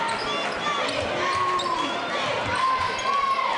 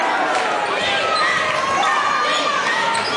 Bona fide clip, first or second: second